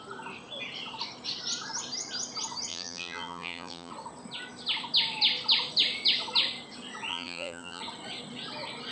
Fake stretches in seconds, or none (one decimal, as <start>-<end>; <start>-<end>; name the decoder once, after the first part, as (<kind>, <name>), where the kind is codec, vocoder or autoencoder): 2.7-3.9 (vocoder, BigVGAN v2); 7.1-7.8